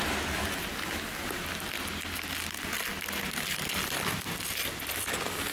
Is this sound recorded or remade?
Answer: recorded